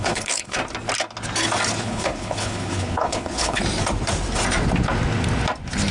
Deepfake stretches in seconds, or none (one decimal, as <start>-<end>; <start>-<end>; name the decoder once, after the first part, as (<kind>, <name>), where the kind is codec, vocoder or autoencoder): 0.0-0.6 (codec, HILCodec); 1.8-3.6